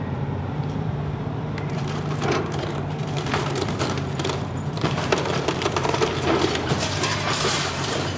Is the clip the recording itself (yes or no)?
no